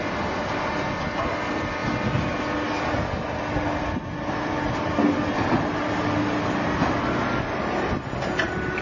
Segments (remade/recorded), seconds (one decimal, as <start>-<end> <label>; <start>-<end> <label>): 0.0-8.8 recorded